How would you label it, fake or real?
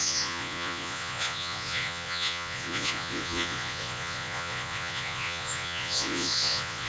fake